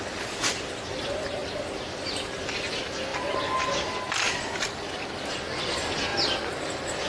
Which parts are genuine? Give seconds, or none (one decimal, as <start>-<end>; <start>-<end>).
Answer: 0.0-7.1